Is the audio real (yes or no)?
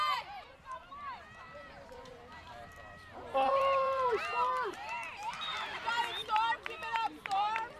no